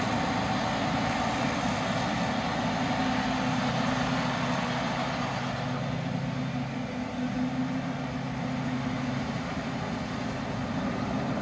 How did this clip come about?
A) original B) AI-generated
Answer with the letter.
A